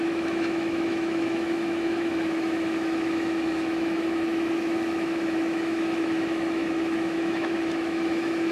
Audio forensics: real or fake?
fake